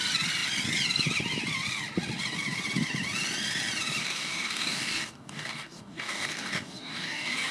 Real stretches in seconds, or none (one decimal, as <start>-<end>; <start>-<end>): 0.0-4.0